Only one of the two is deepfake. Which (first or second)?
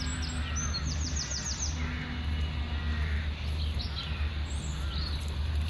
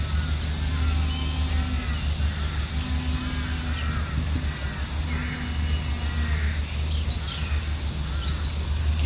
first